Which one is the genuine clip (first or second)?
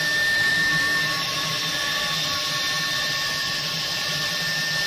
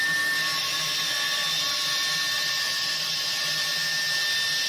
second